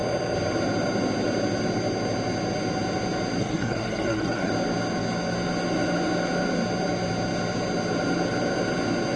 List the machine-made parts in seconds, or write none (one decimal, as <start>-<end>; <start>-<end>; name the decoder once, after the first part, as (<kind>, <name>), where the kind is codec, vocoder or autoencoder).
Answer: 3.4-4.5 (codec, SNAC)